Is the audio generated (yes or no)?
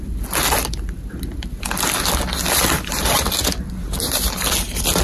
no